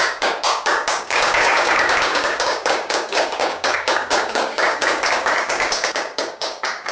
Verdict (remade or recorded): remade